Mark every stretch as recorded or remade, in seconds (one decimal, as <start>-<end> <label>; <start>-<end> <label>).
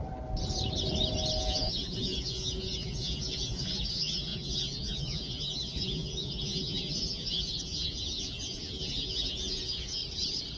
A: 0.0-1.4 recorded; 1.4-10.0 remade; 10.0-10.6 recorded